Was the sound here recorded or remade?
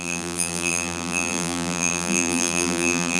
remade